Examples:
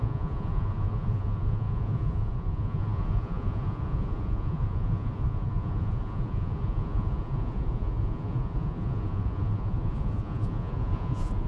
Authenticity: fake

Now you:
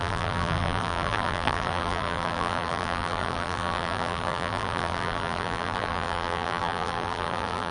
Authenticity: fake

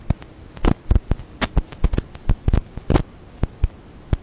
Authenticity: real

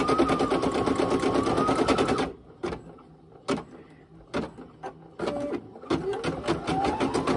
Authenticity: real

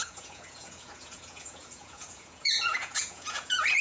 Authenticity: fake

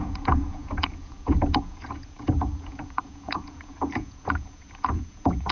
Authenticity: fake